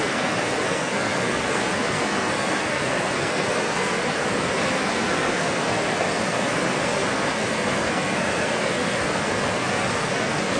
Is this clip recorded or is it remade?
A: remade